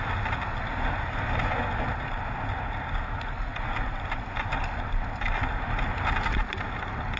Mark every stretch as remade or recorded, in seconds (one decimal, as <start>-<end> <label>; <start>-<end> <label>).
0.0-3.5 recorded; 3.5-6.0 remade; 6.0-7.2 recorded